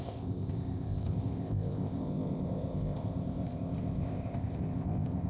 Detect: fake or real fake